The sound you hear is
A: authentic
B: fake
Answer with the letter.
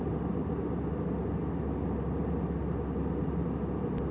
A